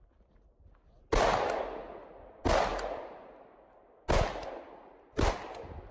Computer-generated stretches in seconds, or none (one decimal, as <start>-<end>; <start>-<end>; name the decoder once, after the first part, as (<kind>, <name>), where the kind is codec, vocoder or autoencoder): none